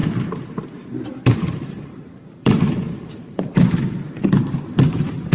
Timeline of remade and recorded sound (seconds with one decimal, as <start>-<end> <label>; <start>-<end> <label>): 0.0-1.0 recorded; 1.0-5.3 remade